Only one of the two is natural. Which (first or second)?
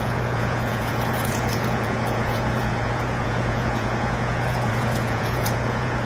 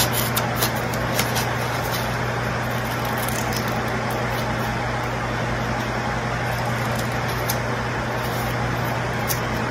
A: second